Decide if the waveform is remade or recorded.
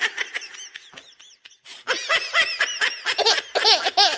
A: recorded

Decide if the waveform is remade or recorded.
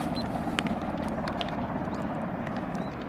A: recorded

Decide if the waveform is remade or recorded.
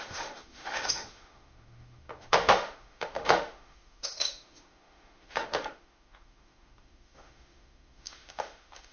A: remade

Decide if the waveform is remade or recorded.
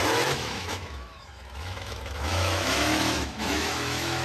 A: remade